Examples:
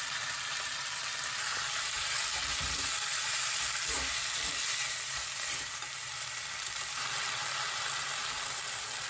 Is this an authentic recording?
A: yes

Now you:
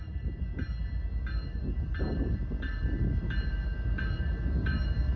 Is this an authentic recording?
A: yes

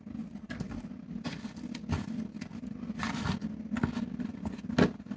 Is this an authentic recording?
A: yes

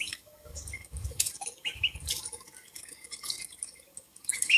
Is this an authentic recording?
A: no